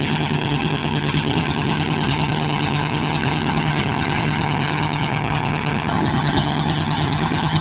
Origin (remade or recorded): remade